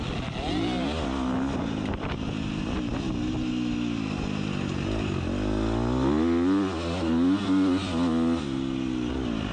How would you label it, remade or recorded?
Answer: recorded